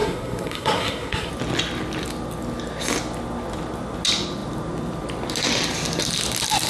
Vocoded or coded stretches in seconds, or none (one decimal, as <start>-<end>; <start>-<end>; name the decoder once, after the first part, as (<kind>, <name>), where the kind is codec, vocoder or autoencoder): 0.0-1.3 (codec, SNAC)